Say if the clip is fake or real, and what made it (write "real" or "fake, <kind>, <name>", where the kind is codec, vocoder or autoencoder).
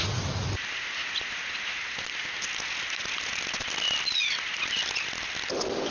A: real